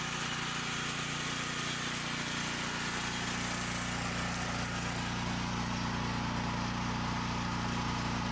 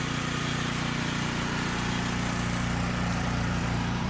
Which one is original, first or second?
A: first